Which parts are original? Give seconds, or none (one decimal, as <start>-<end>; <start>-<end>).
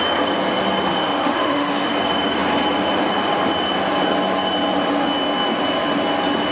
0.0-0.9; 1.9-6.5